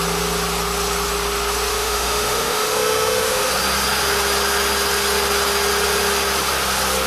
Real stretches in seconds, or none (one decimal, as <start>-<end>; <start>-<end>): 0.0-1.7; 3.5-7.1